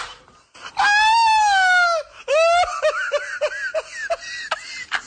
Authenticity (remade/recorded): recorded